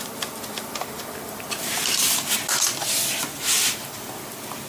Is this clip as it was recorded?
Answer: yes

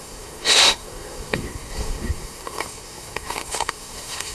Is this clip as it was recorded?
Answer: no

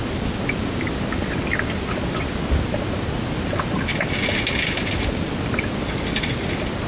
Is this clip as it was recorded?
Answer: yes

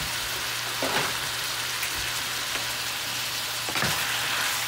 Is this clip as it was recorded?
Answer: yes